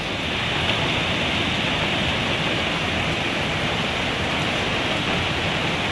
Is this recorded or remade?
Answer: recorded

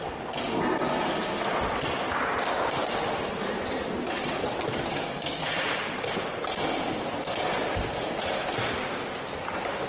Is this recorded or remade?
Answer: recorded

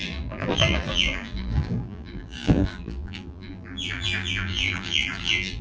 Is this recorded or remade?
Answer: remade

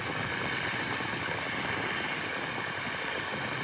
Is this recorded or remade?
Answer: recorded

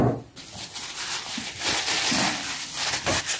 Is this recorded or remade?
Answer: recorded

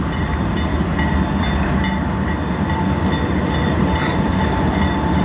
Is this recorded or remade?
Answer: remade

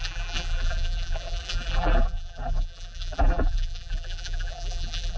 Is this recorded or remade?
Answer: remade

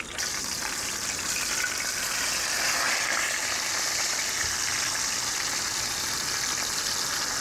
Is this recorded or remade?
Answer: recorded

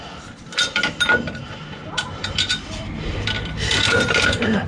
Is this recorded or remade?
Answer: remade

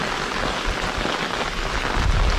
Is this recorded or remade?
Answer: recorded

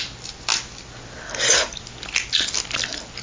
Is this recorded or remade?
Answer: recorded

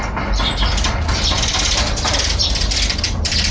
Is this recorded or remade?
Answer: remade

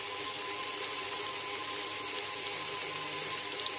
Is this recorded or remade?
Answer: recorded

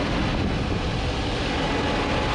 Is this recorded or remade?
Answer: recorded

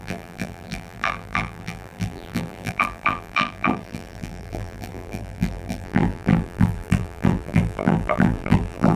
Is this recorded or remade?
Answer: remade